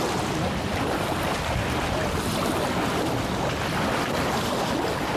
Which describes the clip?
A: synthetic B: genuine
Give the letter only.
B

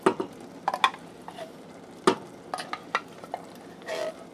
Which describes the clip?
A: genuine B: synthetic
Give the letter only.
A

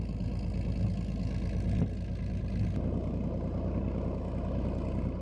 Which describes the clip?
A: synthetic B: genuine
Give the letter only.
B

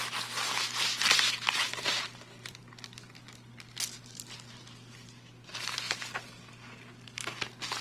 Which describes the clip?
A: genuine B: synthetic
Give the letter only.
A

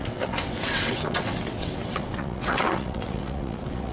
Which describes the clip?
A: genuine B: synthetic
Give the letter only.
B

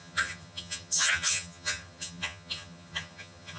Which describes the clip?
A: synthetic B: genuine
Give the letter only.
A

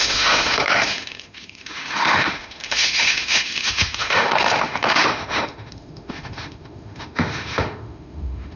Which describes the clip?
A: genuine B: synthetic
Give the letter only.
B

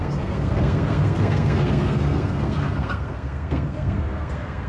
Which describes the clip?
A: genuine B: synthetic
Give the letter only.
B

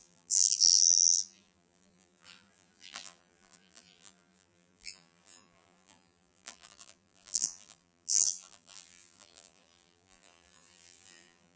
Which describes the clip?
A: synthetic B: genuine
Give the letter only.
A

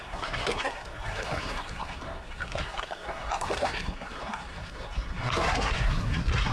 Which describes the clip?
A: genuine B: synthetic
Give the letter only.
B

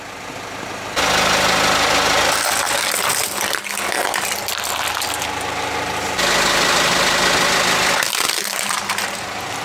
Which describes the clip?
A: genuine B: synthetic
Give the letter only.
A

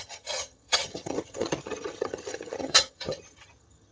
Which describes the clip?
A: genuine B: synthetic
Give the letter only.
B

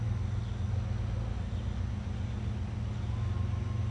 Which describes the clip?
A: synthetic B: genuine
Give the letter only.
B